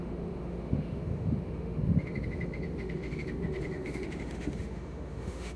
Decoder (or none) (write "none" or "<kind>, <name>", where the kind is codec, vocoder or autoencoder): autoencoder, DAC-VAE